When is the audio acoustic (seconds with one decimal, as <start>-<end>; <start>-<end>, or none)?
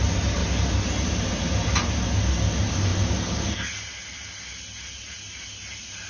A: 0.0-6.1